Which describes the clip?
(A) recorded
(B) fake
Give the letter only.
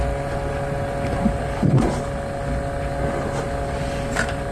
A